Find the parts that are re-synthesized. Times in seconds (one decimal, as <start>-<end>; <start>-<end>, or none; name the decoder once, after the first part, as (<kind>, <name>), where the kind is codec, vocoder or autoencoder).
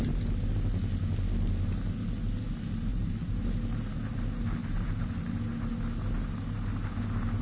2.9-3.4 (vocoder, BigVGAN v2); 4.6-5.3